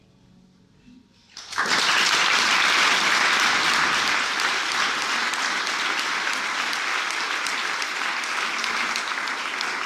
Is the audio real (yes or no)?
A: yes